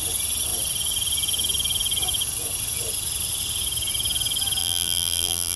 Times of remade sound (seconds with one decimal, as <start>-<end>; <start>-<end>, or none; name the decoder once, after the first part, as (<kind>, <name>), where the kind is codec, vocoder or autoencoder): 4.6-5.6 (vocoder, BigVGAN v2)